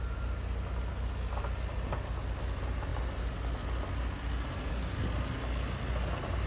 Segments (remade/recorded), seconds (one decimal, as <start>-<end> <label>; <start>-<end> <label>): 0.0-6.5 recorded